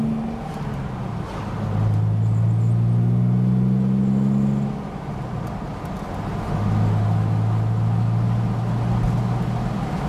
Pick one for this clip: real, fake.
real